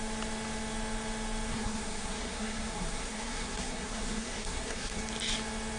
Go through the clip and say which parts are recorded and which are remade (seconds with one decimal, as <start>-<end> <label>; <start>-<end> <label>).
0.0-1.5 recorded; 1.5-5.0 remade; 5.0-5.8 recorded

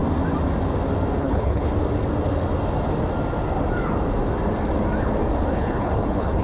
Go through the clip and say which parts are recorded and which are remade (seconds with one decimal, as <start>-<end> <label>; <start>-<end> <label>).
0.0-1.2 recorded; 1.2-1.7 remade; 1.7-5.5 recorded; 5.5-6.4 remade

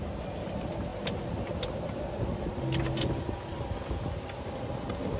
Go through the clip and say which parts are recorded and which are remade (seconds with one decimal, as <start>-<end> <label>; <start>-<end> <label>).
0.0-5.2 recorded